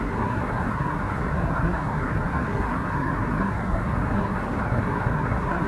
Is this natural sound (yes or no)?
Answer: no